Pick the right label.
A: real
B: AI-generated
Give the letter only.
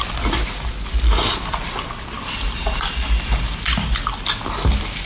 A